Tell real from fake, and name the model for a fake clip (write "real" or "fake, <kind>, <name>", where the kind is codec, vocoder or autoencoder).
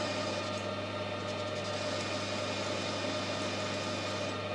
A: real